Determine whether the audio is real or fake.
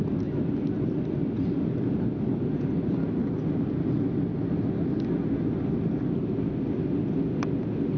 real